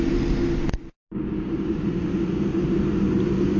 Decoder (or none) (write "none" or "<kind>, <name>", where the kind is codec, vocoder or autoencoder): none